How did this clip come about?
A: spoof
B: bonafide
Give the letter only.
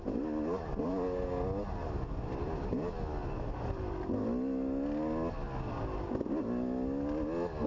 B